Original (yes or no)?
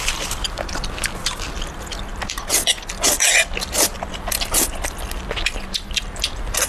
yes